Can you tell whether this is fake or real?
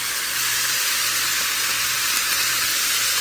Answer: real